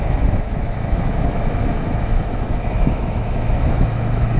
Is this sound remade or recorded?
remade